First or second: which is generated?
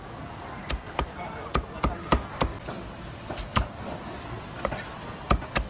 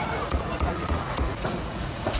second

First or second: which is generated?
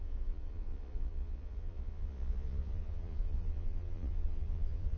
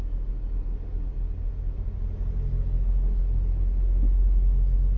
first